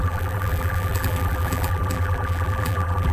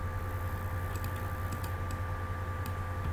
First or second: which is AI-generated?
first